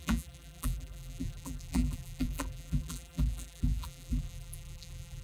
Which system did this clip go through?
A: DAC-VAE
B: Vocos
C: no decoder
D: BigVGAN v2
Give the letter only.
D